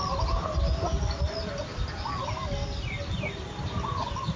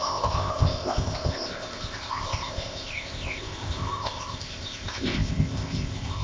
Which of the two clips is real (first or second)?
first